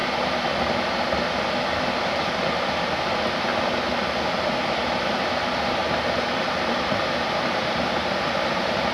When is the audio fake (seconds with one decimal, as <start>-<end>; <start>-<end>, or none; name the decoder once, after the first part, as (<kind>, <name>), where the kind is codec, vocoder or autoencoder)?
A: 2.4-3.5 (vocoder, BigVGAN v2); 4.7-8.9